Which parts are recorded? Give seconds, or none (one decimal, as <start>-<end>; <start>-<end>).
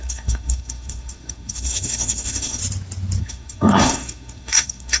2.6-3.2